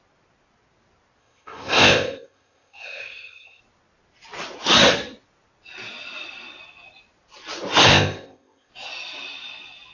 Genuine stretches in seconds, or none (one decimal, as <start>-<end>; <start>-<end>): 0.0-1.2; 3.6-7.9; 8.7-9.9